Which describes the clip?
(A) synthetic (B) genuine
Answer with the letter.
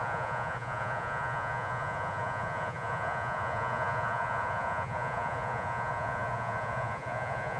A